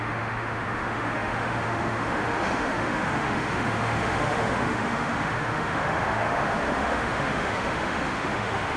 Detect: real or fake fake